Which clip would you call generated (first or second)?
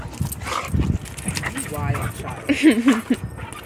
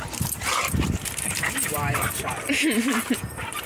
second